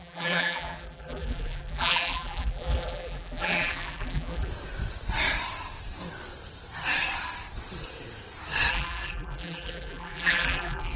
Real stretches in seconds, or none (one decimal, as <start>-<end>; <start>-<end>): 4.5-8.7